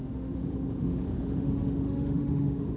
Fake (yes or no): yes